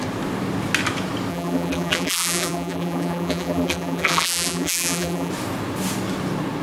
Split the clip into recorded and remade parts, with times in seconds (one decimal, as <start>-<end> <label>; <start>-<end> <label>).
0.0-1.3 recorded; 1.3-5.3 remade; 5.3-6.6 recorded